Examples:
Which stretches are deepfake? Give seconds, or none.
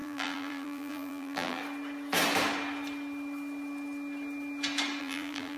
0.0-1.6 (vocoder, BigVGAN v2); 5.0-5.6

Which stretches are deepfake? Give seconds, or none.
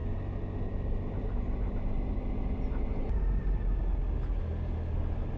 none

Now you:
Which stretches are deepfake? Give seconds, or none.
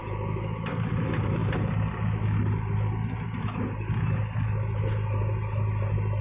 0.0-0.7 (autoencoder, DAC-VAE)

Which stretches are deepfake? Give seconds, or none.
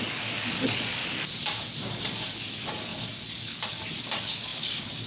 0.0-1.0 (codec, DAC); 1.9-5.1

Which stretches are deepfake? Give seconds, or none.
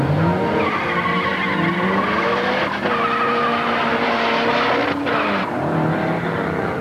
none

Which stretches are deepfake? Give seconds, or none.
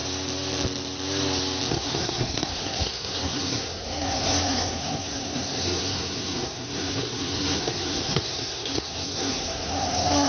1.7-10.3 (codec, SNAC)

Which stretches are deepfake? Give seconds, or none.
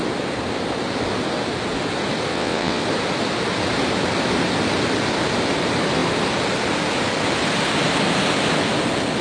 2.3-2.8 (vocoder, WaveNeXt)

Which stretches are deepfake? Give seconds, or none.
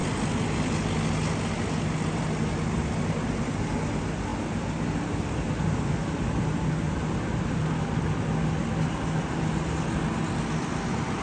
none